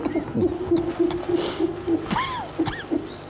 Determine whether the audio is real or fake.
real